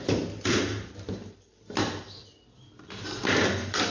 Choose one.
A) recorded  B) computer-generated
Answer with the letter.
B